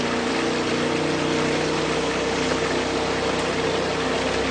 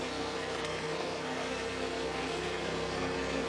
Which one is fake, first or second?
second